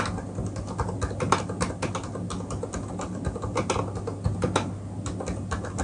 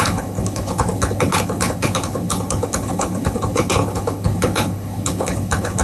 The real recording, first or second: first